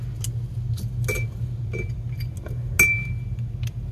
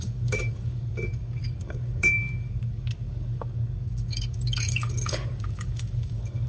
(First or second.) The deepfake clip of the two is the second